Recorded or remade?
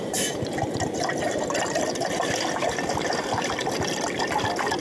recorded